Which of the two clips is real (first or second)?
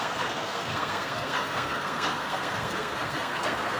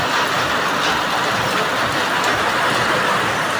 second